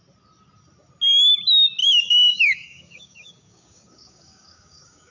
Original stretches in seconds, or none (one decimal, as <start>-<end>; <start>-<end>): 0.0-1.8